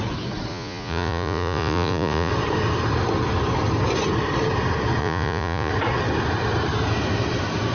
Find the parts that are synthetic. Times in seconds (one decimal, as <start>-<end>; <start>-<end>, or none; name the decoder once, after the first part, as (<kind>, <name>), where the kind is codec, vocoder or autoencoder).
0.5-2.3 (vocoder, Vocos); 5.0-5.7